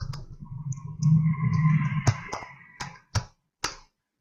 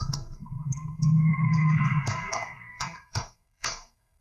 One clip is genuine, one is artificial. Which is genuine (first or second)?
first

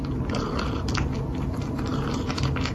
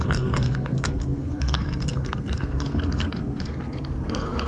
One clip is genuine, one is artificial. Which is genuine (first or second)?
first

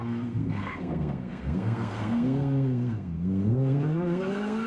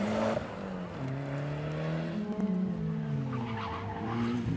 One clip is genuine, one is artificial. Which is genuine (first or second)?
second